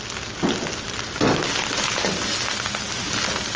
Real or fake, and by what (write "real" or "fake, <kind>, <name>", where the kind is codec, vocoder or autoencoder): real